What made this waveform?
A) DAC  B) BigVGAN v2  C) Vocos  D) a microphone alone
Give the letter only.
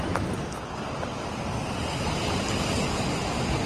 D